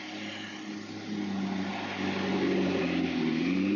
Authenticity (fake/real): real